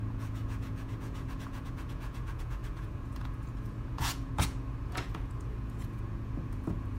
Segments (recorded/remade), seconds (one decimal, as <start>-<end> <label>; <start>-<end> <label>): 0.0-7.0 remade